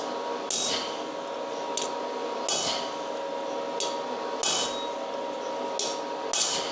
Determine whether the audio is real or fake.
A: real